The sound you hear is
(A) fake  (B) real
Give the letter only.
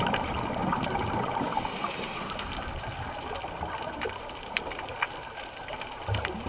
A